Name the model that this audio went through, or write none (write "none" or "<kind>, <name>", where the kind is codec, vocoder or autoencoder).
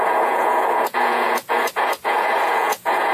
vocoder, Vocos